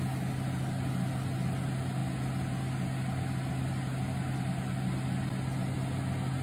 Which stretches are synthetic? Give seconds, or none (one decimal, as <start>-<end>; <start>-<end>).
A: none